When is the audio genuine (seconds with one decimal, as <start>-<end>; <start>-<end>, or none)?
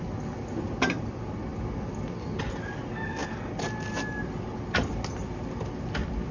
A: 0.0-6.3